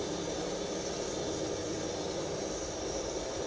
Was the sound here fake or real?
real